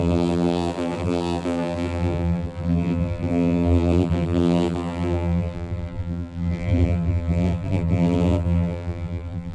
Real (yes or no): no